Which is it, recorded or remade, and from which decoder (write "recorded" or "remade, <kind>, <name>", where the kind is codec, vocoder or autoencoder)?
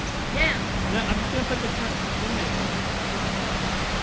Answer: recorded